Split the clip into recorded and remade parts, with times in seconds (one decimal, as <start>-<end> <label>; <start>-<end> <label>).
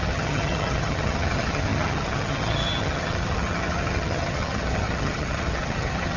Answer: 0.0-6.2 remade